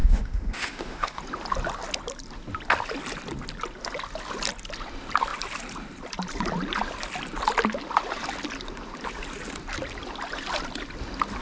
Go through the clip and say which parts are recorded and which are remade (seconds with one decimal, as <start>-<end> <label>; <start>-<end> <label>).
0.0-1.2 remade; 1.2-11.4 recorded